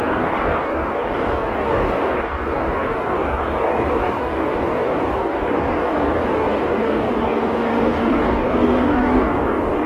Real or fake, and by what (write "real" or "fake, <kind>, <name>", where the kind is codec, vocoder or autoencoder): fake, codec, DAC